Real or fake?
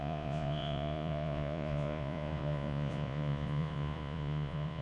fake